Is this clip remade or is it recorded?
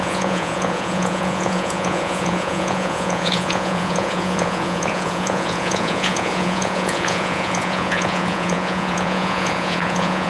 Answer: remade